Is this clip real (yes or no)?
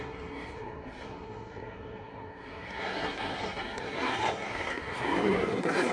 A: no